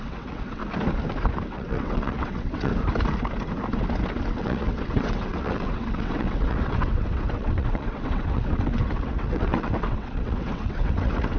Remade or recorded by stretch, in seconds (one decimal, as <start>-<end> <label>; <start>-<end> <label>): 0.0-0.6 remade; 0.6-1.5 recorded; 1.5-2.7 remade; 2.7-4.3 recorded; 4.3-11.4 remade